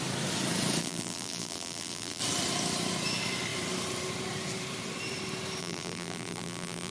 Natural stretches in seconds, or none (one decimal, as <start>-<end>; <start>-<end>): 0.0-0.8; 2.2-5.6